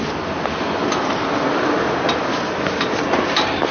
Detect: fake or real real